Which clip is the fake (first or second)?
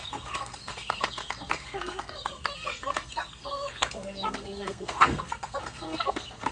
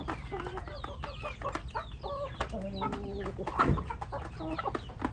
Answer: first